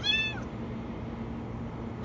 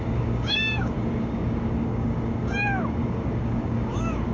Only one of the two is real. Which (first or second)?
first